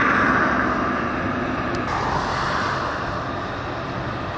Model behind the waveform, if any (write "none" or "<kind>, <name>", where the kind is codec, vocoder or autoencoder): none